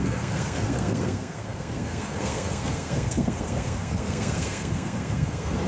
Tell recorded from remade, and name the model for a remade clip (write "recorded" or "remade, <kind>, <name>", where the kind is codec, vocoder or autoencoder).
remade, codec, SNAC